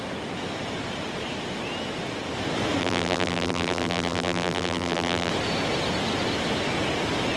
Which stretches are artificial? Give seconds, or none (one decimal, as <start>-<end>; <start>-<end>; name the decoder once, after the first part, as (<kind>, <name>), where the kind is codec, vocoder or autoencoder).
2.8-5.3 (vocoder, BigVGAN v2)